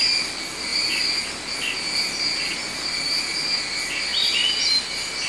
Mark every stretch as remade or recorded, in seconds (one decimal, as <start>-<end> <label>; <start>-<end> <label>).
0.0-5.3 recorded